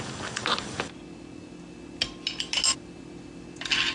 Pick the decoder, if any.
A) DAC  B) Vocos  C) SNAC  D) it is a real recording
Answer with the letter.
D